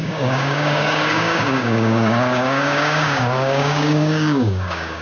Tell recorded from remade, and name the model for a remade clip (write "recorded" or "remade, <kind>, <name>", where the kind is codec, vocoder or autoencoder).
remade, codec, DAC